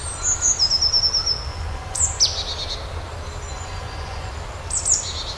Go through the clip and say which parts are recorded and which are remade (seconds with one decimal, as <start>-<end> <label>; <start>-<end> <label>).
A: 0.0-1.5 recorded; 1.5-2.2 remade; 2.2-3.5 recorded; 3.5-4.3 remade; 4.3-5.4 recorded